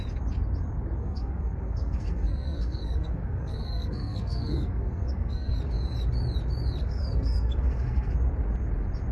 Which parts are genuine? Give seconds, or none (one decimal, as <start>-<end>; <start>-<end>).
0.0-1.0; 5.6-6.8; 8.1-9.1